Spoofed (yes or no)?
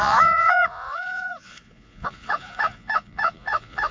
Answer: yes